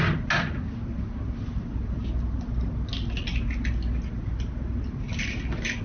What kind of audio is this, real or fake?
real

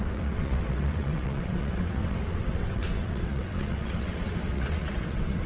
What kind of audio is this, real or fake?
fake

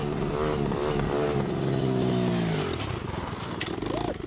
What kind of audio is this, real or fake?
real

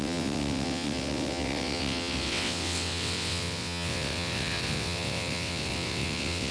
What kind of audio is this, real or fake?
fake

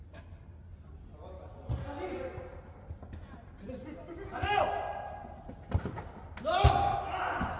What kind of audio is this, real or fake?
real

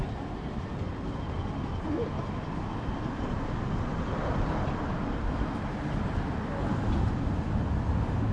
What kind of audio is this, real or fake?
real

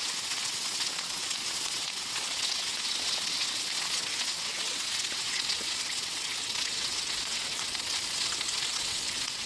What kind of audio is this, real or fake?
fake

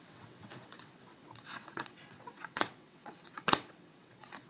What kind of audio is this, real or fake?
fake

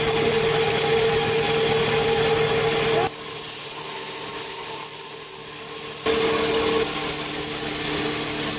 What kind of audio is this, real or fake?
real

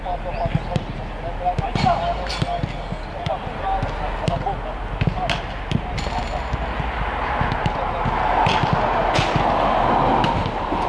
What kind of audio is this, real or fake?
real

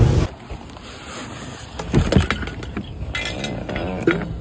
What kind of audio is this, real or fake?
real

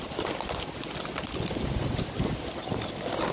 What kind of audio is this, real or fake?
real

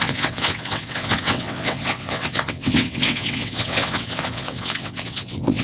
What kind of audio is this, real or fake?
fake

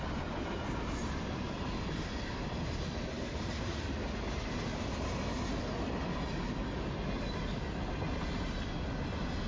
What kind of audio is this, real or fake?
real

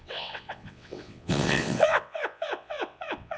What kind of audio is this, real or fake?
fake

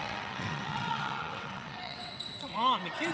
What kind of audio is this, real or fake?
fake